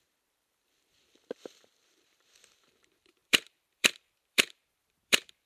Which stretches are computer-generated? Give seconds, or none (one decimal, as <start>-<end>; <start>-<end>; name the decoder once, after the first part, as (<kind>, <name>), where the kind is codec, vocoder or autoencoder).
0.0-5.5 (vocoder, BigVGAN v2)